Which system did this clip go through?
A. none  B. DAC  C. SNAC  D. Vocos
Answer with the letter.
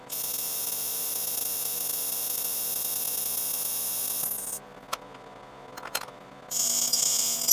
A